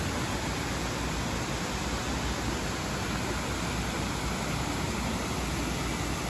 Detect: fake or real real